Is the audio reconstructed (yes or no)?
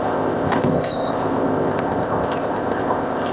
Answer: yes